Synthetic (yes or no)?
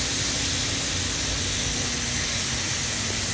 no